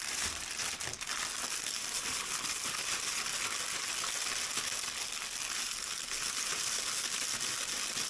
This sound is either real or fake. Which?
real